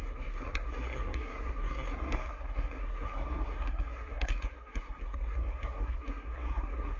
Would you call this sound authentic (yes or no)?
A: no